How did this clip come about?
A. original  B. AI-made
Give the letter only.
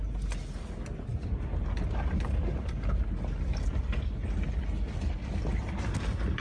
A